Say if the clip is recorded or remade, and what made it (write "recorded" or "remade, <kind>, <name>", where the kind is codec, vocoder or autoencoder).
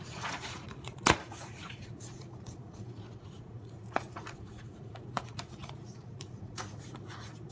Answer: remade, vocoder, Vocos